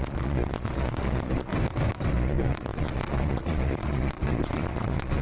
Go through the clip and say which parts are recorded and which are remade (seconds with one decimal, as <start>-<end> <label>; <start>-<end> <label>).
0.0-1.5 remade; 1.5-2.1 recorded; 2.1-5.2 remade